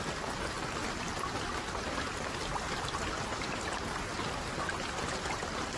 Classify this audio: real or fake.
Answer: real